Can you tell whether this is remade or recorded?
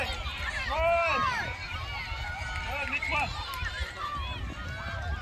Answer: recorded